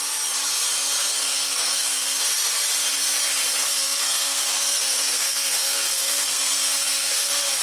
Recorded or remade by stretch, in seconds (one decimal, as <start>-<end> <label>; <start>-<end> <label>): 0.0-1.1 recorded; 1.1-2.2 remade; 2.2-3.6 recorded; 3.6-7.6 remade